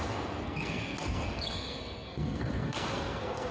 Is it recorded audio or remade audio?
remade